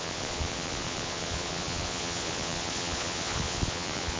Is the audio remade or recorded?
remade